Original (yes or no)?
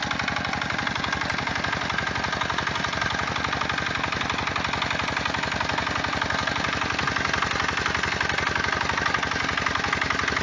yes